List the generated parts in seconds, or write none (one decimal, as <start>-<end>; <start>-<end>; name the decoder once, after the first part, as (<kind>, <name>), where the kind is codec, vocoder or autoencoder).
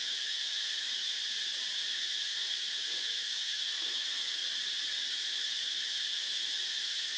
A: 0.0-1.2 (autoencoder, DAC-VAE); 1.9-4.4; 5.1-7.2